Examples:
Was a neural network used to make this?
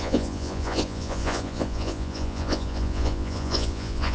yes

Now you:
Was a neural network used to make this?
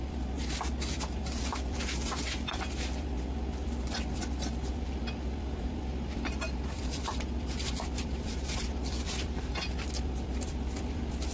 yes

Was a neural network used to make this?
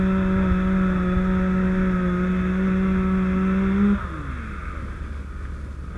no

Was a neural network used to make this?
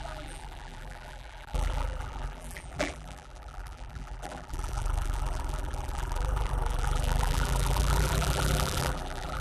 yes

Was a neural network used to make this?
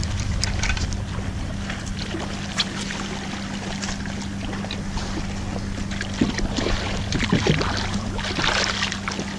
no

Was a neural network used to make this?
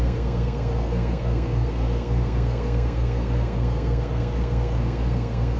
yes